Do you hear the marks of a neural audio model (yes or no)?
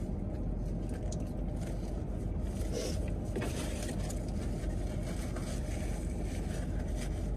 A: no